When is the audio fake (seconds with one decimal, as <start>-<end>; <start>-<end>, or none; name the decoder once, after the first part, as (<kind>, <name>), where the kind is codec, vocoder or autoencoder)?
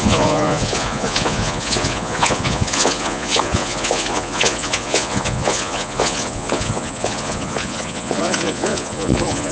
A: 0.0-9.5 (vocoder, Vocos)